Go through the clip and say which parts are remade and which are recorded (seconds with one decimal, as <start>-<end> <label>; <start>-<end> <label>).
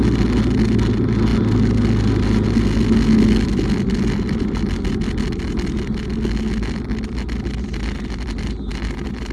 0.0-9.3 recorded